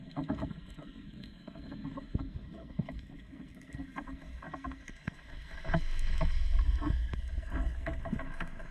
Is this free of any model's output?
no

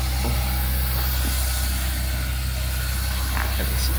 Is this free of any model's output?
yes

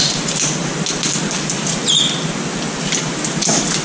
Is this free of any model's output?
yes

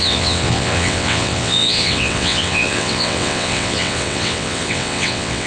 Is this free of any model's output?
no